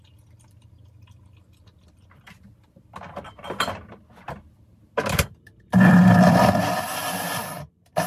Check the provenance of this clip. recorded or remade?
remade